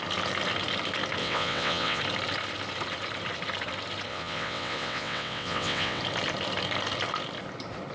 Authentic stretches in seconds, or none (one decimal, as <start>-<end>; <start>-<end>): 0.0-1.2; 2.0-4.1; 6.0-7.9